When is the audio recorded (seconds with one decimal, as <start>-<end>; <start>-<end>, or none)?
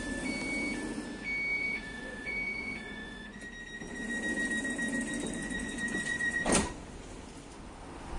0.0-1.5; 3.4-5.4; 6.5-8.2